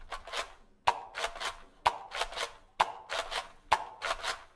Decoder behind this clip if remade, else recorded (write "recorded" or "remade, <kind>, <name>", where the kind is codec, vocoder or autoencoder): recorded